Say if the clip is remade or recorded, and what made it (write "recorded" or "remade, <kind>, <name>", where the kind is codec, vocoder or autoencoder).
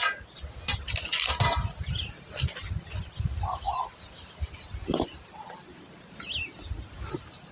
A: recorded